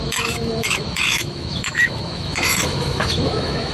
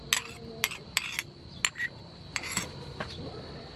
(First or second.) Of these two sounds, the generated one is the first